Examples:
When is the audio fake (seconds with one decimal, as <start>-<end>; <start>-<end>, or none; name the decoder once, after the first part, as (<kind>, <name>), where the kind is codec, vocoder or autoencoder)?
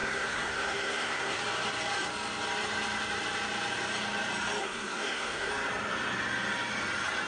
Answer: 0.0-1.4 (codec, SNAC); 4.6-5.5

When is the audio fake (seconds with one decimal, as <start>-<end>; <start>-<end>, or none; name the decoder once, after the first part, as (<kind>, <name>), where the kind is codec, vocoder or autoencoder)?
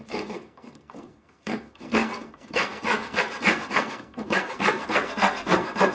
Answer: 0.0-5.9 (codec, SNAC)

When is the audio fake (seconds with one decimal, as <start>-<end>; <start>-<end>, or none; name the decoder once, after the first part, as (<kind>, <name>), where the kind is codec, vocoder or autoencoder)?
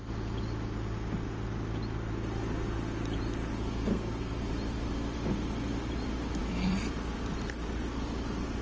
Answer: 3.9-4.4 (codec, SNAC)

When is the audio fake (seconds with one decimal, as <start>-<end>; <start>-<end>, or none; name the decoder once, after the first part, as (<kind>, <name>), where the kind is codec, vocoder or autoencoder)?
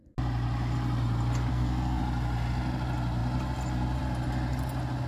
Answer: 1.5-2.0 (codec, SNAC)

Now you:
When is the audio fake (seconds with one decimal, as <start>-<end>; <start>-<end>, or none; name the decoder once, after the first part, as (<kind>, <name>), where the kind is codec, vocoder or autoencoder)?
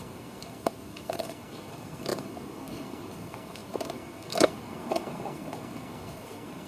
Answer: 0.0-6.7 (codec, SNAC)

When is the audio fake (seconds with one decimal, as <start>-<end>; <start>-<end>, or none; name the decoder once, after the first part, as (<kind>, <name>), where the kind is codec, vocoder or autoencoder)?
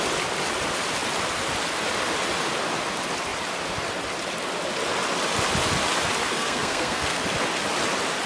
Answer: 6.3-7.2 (codec, SNAC)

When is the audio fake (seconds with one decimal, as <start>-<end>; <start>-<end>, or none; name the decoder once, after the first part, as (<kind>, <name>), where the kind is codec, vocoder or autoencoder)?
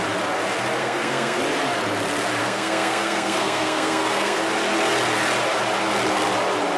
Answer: 0.8-1.4 (codec, SNAC); 2.4-4.4